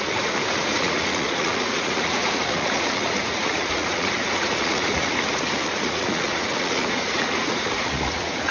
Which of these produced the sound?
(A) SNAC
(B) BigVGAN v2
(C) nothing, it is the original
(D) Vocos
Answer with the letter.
D